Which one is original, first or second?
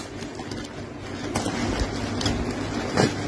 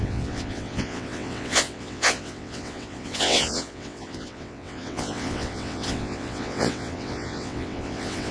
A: first